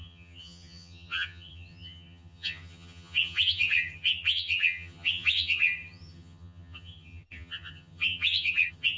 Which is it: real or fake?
fake